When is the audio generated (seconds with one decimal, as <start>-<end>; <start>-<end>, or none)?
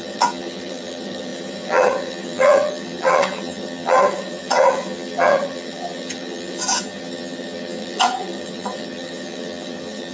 0.0-10.1